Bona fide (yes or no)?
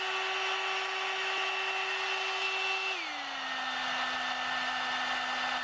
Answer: yes